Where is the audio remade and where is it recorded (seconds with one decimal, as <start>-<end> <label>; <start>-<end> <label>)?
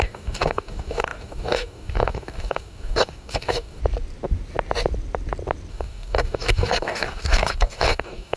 0.0-3.8 remade; 3.8-5.7 recorded; 5.7-8.4 remade